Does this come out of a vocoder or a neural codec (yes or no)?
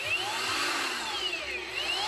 no